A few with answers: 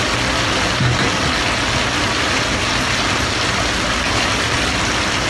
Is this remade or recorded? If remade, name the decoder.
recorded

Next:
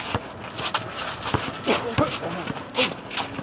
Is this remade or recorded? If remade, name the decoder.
recorded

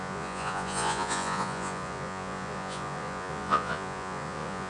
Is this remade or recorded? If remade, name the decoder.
remade, vocoder, Vocos